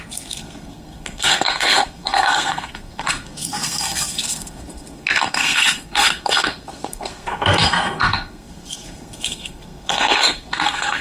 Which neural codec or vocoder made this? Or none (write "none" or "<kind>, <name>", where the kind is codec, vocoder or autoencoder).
codec, SNAC